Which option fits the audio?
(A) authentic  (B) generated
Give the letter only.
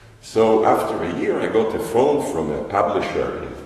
B